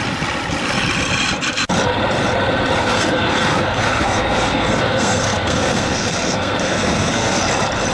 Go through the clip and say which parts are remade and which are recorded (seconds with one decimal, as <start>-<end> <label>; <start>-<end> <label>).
0.0-2.8 recorded; 2.8-7.4 remade; 7.4-7.9 recorded